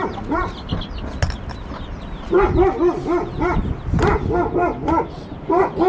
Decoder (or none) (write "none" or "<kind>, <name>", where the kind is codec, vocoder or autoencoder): none